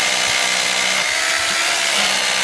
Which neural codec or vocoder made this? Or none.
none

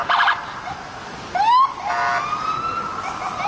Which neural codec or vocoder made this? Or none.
none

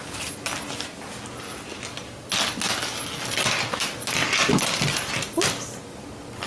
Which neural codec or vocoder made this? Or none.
none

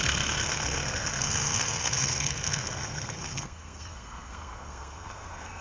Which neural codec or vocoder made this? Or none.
codec, SNAC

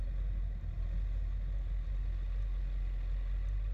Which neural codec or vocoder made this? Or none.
none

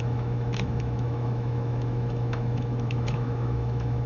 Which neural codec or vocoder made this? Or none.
autoencoder, DAC-VAE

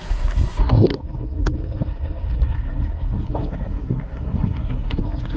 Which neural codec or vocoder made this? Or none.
codec, SNAC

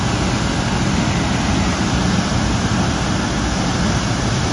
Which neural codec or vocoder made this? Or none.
none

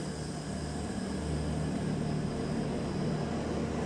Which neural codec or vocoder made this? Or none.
none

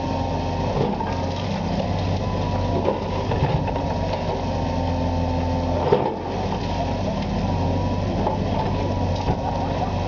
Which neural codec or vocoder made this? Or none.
none